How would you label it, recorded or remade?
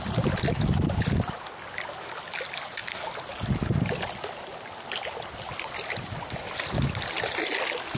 recorded